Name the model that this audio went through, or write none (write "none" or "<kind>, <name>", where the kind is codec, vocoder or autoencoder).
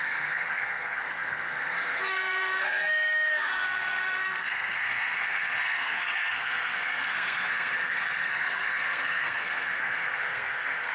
codec, SNAC